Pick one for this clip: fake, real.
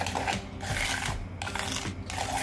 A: real